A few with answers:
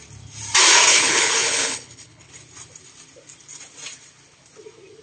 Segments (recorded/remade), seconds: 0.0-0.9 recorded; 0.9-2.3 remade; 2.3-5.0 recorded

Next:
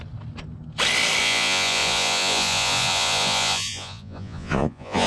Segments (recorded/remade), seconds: 0.0-1.2 recorded; 1.2-5.1 remade

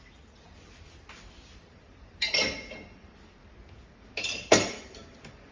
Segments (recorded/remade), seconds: 0.0-5.5 recorded